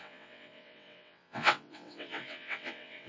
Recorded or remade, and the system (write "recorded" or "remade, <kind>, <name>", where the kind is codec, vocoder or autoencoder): remade, vocoder, WaveNeXt